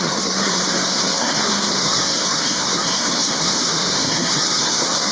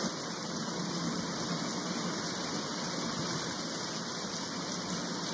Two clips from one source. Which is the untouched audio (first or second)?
second